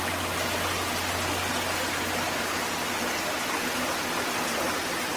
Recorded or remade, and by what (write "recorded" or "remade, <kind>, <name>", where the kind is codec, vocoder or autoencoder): recorded